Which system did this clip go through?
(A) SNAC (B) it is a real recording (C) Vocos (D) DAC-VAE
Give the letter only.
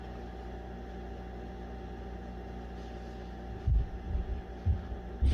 B